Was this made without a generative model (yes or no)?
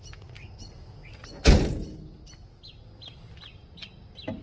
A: yes